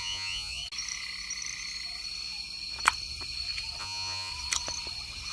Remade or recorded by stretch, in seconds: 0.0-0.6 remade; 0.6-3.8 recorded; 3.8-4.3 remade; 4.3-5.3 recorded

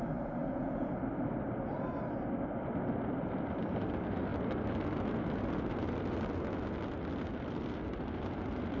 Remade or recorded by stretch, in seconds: 0.0-0.4 recorded; 0.4-0.9 remade; 0.9-8.8 recorded